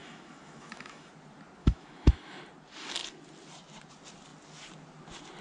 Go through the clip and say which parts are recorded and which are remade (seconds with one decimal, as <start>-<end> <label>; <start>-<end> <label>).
0.0-1.1 remade; 1.1-1.6 recorded; 1.6-2.4 remade; 2.4-5.4 recorded